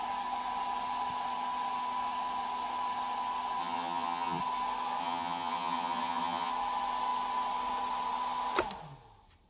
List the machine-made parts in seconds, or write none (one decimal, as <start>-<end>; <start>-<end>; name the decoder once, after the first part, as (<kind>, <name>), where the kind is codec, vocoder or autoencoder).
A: 3.6-4.4 (vocoder, HiFi-GAN); 5.0-6.5